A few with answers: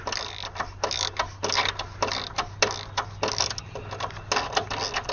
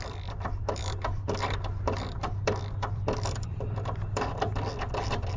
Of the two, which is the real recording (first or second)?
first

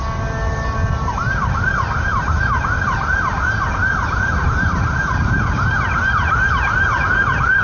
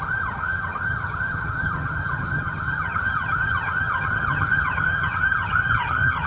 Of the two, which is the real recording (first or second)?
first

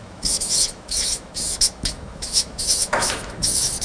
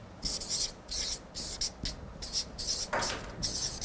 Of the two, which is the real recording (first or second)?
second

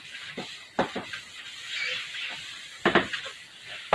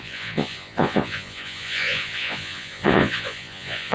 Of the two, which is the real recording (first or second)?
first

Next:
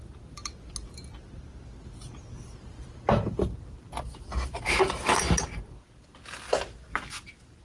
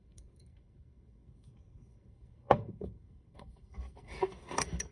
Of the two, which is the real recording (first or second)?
first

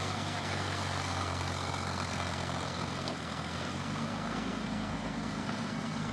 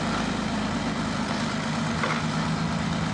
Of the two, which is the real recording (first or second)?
second